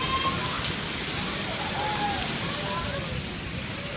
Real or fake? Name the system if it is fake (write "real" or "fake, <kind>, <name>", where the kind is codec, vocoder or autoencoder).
real